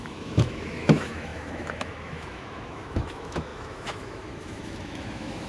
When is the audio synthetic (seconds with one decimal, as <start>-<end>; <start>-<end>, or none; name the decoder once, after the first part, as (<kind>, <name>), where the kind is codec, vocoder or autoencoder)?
0.0-5.5 (autoencoder, DAC-VAE)